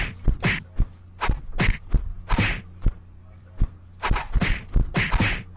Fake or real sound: real